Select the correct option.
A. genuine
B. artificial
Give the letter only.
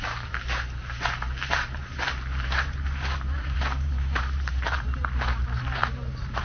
B